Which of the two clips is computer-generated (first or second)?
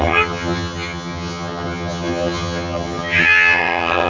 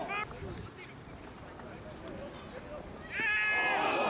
first